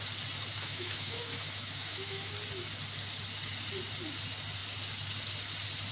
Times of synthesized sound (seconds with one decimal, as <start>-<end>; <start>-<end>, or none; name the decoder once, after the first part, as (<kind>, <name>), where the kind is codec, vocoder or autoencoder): 0.5-2.3 (autoencoder, DAC-VAE)